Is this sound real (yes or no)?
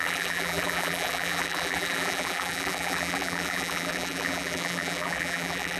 no